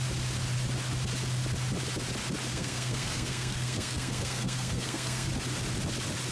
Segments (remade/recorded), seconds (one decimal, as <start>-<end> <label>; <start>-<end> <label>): 0.0-2.5 recorded; 2.5-5.3 remade; 5.3-6.3 recorded